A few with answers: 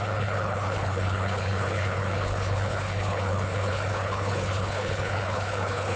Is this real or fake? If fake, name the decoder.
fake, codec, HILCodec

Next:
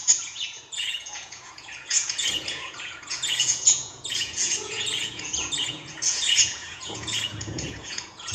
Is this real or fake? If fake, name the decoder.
fake, vocoder, Vocos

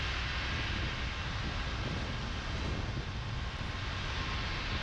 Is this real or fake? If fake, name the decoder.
real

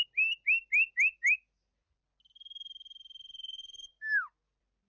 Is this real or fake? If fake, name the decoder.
real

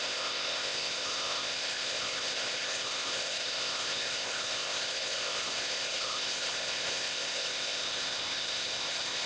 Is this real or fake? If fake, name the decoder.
fake, codec, ZipCodec